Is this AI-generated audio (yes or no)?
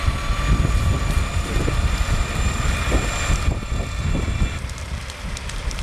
no